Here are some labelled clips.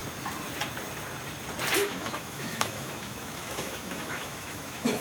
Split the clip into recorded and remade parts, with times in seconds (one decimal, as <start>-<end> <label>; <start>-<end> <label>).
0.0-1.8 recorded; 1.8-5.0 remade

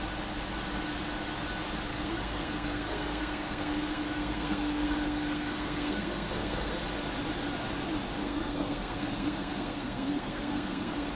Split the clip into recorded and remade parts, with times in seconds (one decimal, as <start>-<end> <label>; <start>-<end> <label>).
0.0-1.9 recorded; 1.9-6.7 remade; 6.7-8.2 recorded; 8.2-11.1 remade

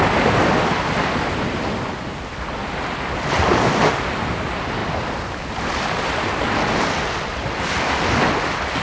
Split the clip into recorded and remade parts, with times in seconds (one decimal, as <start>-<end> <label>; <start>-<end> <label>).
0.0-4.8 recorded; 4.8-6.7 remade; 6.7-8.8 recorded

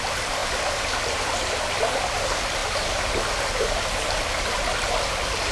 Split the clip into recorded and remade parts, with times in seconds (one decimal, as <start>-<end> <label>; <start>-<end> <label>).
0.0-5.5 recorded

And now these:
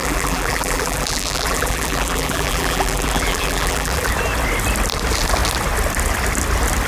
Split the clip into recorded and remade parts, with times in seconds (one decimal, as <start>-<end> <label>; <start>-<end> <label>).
0.0-4.1 remade; 4.1-6.9 recorded